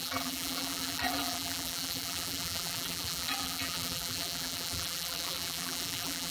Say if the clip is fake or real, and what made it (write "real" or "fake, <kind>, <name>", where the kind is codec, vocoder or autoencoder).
fake, vocoder, BigVGAN v2